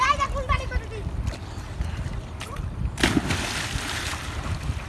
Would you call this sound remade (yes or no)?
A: no